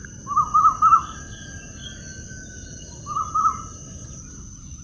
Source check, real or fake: real